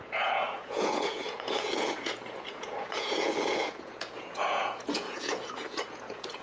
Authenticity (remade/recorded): remade